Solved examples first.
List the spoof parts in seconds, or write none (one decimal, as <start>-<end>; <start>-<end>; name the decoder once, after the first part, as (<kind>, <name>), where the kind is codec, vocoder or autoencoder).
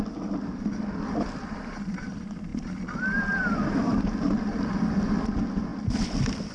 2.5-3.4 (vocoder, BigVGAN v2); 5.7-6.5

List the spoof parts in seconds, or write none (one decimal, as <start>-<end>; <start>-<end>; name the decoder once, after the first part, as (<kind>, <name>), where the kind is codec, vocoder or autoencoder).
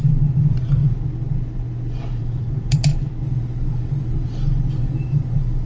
0.0-0.8 (vocoder, BigVGAN v2); 2.2-2.9; 4.7-5.7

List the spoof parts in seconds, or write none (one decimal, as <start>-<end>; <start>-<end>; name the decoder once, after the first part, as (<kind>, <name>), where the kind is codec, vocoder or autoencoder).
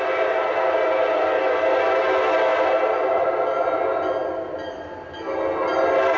none